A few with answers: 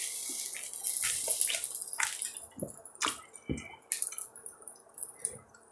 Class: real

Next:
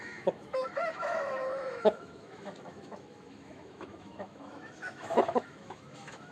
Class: fake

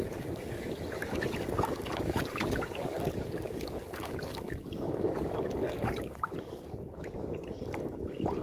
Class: fake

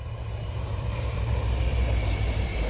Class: fake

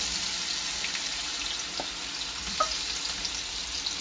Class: real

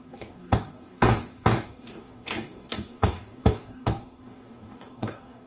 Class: fake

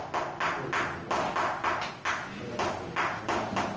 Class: real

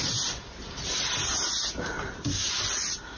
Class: fake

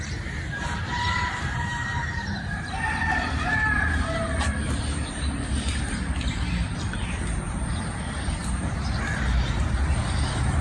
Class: fake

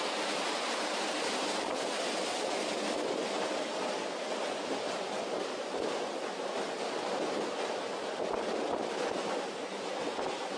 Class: real